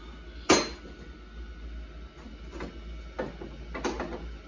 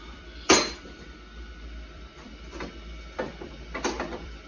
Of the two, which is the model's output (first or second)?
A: second